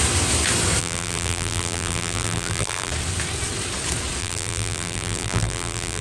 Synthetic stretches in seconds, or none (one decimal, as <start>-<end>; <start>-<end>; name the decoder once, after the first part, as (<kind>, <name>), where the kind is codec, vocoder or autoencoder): 0.8-2.9 (vocoder, BigVGAN v2); 4.2-6.0